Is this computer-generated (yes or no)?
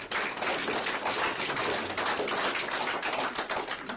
no